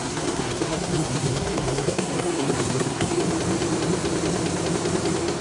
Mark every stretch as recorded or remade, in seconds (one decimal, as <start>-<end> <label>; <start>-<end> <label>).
0.0-3.2 remade; 3.2-5.4 recorded